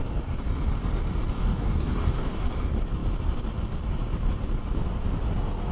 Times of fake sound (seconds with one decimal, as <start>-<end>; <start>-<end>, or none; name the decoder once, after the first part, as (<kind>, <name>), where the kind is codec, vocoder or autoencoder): 1.4-2.5 (codec, DAC)